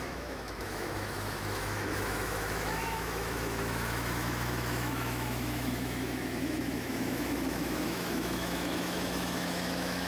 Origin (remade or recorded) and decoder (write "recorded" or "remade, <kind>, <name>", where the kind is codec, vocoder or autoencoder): remade, autoencoder, DAC-VAE